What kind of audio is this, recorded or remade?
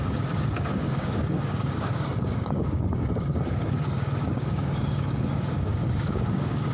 remade